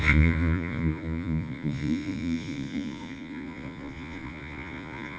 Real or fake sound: fake